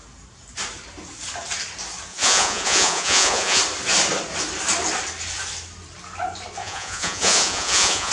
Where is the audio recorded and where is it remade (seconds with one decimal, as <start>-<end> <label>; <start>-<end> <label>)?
0.0-2.1 recorded; 2.1-3.6 remade; 3.6-6.6 recorded; 6.6-8.1 remade